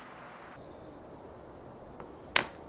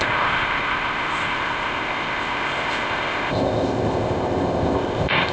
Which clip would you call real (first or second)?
first